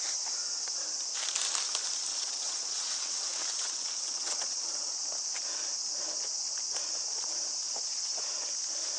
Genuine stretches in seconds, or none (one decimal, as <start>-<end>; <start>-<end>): 0.0-2.1; 4.9-9.0